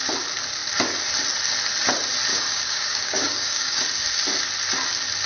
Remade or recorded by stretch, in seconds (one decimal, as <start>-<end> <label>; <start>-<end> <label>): 0.0-2.3 recorded; 2.3-3.8 remade; 3.8-5.3 recorded